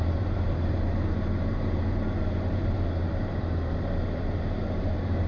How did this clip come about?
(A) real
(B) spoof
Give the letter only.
B